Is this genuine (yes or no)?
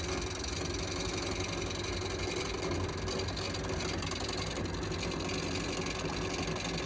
yes